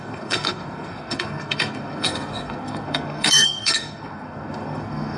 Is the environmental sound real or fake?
fake